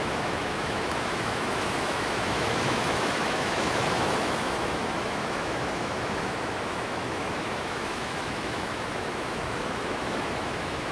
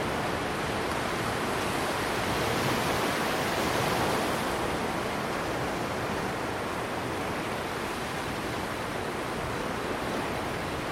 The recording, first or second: second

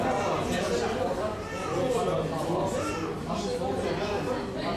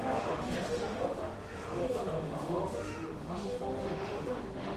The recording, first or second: first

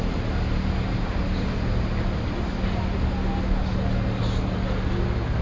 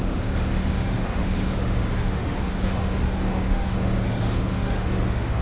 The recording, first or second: first